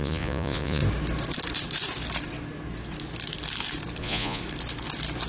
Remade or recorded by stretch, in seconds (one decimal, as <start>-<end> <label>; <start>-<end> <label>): 0.0-0.8 remade; 0.8-4.0 recorded; 4.0-4.4 remade; 4.4-5.3 recorded